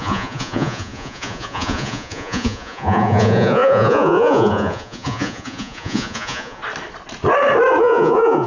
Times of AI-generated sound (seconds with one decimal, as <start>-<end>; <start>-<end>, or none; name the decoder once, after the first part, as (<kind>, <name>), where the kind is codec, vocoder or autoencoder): 0.0-6.6 (vocoder, Vocos); 7.8-8.5